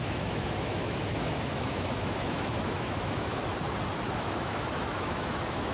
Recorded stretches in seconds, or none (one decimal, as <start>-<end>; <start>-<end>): 3.4-4.1